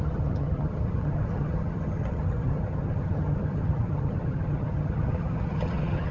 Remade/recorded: remade